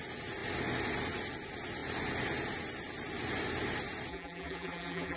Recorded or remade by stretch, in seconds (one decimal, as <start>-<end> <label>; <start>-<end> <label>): 0.0-4.1 recorded; 4.1-5.2 remade